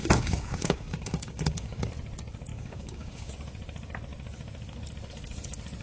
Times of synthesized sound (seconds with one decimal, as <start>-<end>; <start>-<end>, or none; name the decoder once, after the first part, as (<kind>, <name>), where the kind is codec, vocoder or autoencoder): 0.0-1.9 (codec, DAC); 2.5-3.3